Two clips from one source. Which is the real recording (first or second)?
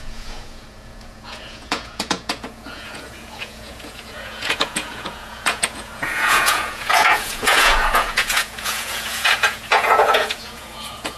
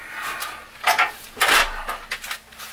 second